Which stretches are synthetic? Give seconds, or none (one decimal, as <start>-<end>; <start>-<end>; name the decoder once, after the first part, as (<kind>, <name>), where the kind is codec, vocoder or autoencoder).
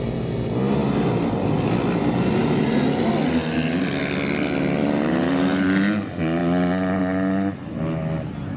2.4-3.1 (vocoder, BigVGAN v2)